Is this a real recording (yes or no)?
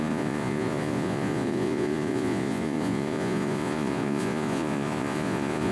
no